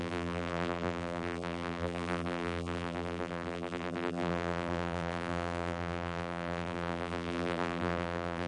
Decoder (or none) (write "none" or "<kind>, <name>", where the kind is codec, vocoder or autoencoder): vocoder, BigVGAN v2